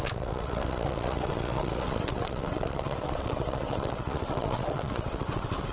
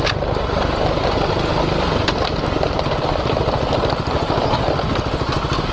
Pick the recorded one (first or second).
second